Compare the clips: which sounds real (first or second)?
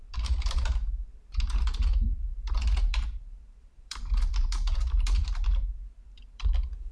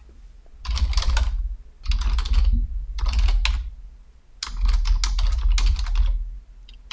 second